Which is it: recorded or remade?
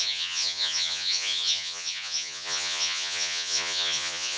remade